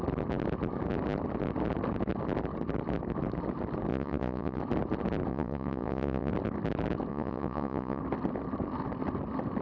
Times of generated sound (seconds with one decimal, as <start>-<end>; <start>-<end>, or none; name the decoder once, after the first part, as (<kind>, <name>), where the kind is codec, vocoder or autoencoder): 3.9-4.6 (vocoder, Vocos); 5.3-6.3; 7.1-8.0